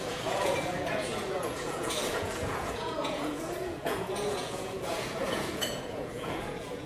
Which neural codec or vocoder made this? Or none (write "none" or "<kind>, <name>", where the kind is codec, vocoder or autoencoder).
vocoder, Vocos